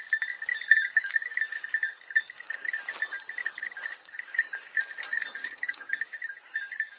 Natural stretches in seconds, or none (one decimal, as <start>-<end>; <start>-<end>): 0.0-0.5; 2.8-3.4; 4.8-5.4